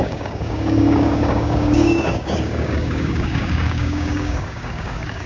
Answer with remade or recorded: remade